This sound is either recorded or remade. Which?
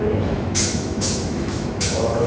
remade